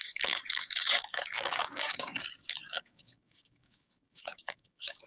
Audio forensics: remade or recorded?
remade